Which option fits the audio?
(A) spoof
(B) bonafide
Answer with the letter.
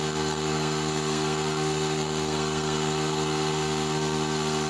A